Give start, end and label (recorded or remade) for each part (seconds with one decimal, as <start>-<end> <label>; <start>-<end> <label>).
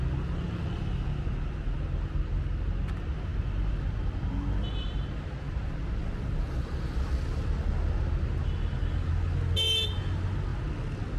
0.0-11.2 recorded